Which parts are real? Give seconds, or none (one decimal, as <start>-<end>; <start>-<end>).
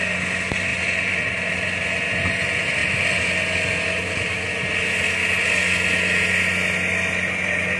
0.0-0.7; 1.5-7.8